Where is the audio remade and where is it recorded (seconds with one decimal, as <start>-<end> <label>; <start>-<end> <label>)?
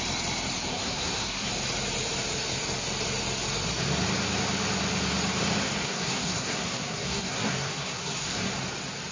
0.0-0.7 recorded; 0.7-1.5 remade; 1.5-5.8 recorded; 5.8-8.5 remade; 8.5-9.1 recorded